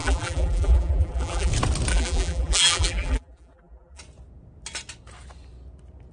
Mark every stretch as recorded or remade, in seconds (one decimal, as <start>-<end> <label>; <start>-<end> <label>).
0.0-1.5 remade; 1.5-1.9 recorded; 1.9-4.0 remade; 4.0-6.1 recorded